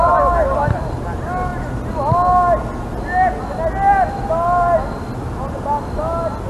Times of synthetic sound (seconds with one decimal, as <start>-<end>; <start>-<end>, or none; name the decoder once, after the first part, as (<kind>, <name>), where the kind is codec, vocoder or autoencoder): none